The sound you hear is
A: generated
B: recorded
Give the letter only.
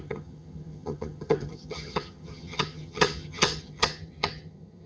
A